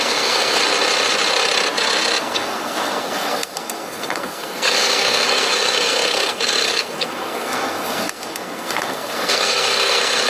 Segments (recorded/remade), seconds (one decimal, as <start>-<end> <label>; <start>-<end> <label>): 0.0-0.6 remade; 0.6-2.2 recorded; 2.2-10.3 remade

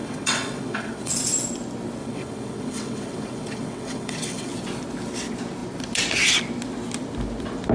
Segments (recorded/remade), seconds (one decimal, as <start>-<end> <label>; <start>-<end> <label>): 0.0-1.1 remade; 1.1-2.0 recorded; 2.0-4.5 remade; 4.5-7.7 recorded

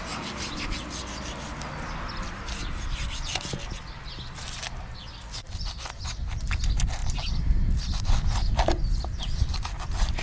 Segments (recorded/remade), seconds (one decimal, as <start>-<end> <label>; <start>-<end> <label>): 0.0-10.2 recorded

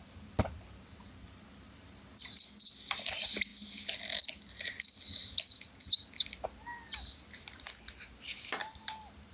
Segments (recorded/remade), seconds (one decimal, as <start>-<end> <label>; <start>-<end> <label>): 0.0-2.1 remade; 2.1-3.1 recorded; 3.1-3.5 remade; 3.5-7.1 recorded; 7.1-9.3 remade

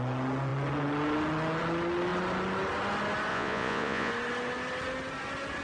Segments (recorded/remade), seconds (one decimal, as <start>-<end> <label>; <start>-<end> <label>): 0.0-3.3 recorded; 3.3-4.1 remade; 4.1-5.6 recorded